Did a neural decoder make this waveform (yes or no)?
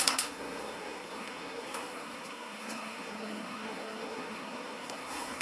yes